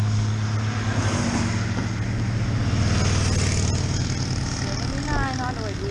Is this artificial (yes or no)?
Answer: no